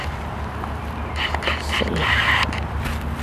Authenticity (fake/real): real